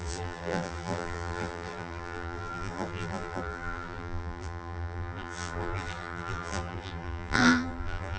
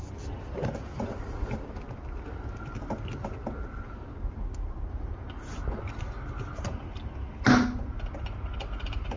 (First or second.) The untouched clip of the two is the second